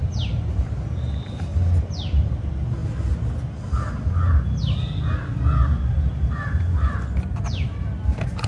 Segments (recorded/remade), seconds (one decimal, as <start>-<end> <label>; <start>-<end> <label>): 0.0-8.5 recorded